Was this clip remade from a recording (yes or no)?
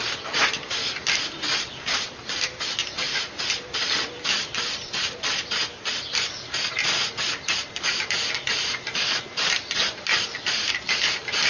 yes